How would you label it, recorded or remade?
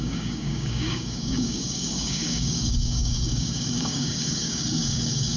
remade